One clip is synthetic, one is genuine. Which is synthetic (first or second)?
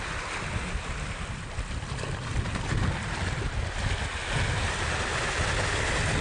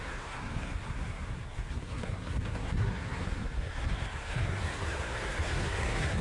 second